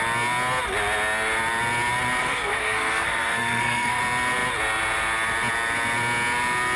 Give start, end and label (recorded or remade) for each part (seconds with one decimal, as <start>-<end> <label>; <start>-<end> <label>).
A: 0.0-2.2 recorded; 2.2-4.0 remade; 4.0-6.8 recorded